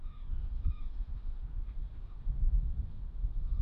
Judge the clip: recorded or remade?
remade